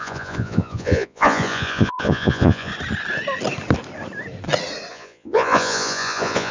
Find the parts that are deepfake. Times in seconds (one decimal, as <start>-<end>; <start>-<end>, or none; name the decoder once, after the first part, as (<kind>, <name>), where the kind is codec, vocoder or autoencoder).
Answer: 0.0-2.7 (vocoder, Vocos); 4.9-6.5